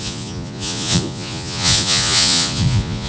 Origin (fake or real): fake